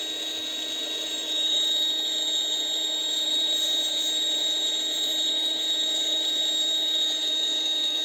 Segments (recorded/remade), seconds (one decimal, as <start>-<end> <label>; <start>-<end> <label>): 0.0-0.8 recorded; 0.8-1.7 remade; 1.7-3.0 recorded; 3.0-6.4 remade; 6.4-8.0 recorded